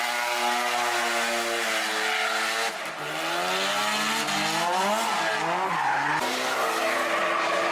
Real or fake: real